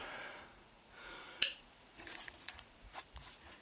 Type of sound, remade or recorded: remade